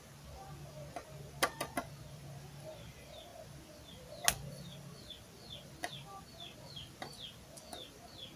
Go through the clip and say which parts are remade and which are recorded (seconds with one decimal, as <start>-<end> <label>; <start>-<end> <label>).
0.0-8.4 recorded